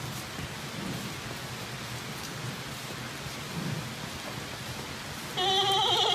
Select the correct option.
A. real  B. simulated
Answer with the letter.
A